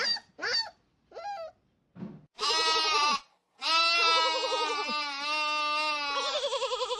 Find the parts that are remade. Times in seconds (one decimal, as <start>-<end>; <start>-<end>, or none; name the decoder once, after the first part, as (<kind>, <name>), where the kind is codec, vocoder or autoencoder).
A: none